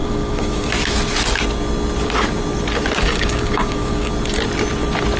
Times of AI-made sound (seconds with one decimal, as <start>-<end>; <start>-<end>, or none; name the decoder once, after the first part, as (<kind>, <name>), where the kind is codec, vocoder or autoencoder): 0.0-0.7 (codec, DAC); 3.1-4.1